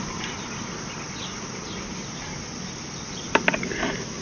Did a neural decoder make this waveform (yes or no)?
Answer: no